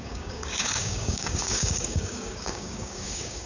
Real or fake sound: fake